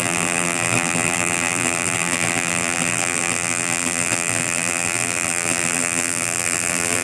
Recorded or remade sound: remade